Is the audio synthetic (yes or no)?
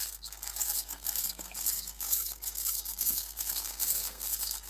yes